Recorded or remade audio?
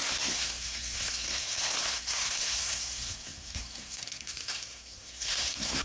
remade